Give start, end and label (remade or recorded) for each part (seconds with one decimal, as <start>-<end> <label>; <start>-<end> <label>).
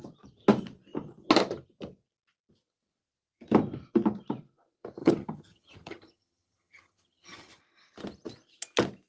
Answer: 0.0-5.0 recorded; 5.0-7.6 remade; 7.6-9.1 recorded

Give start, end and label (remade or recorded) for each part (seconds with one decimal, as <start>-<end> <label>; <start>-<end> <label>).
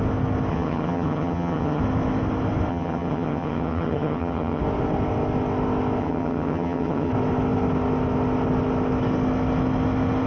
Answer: 0.0-0.5 recorded; 0.5-1.8 remade; 1.8-2.7 recorded; 2.7-4.6 remade; 4.6-6.0 recorded; 6.0-7.1 remade; 7.1-10.3 recorded